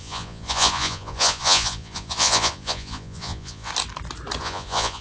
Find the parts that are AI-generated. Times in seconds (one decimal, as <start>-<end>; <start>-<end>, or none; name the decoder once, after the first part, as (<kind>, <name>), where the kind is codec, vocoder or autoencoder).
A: 0.0-3.7 (vocoder, Vocos); 4.4-5.0